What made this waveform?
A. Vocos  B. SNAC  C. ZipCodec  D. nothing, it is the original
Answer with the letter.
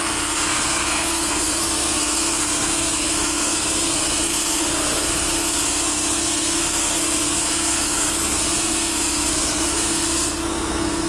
B